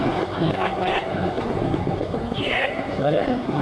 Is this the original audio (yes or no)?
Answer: no